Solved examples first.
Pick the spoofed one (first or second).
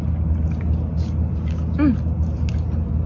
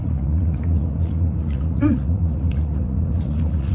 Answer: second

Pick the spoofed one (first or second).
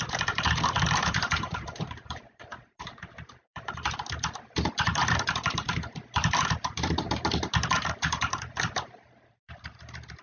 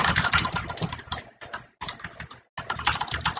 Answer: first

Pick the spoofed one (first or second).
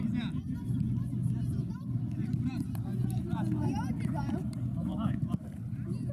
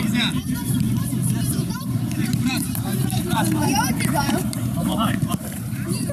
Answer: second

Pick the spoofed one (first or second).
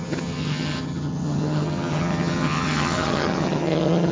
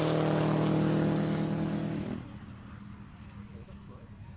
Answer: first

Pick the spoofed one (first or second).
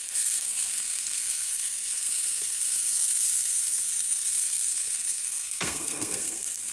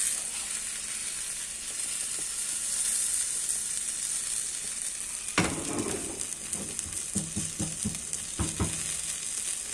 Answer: first